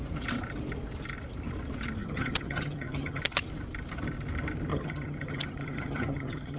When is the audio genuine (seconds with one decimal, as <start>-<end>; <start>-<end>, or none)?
0.0-2.0; 3.2-4.7